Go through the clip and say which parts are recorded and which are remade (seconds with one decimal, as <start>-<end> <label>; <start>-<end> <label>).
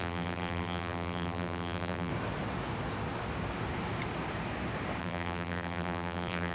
0.0-2.1 remade; 2.1-5.0 recorded; 5.0-6.5 remade